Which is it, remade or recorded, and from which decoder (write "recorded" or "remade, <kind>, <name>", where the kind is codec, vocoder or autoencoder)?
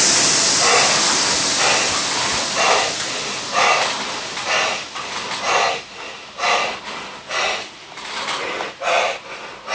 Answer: recorded